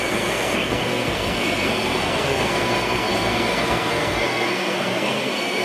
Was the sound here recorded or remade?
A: remade